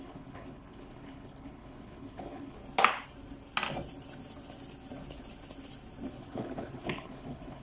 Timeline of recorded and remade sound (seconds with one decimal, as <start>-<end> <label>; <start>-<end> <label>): 0.0-2.6 remade; 2.6-6.2 recorded; 6.2-7.6 remade